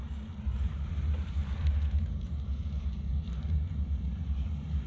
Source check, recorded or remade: remade